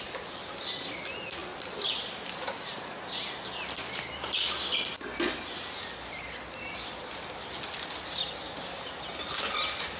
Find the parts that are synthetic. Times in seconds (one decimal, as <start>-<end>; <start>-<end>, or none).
none